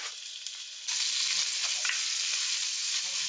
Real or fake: real